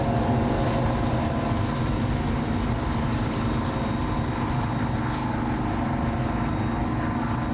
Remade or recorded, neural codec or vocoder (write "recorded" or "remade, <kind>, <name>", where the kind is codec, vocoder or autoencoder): recorded